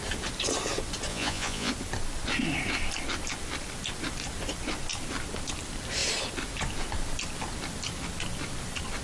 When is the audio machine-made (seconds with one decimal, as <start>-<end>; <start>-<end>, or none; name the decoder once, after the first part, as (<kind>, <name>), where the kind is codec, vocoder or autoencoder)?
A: 1.1-1.7 (vocoder, Vocos)